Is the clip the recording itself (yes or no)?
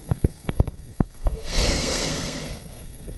no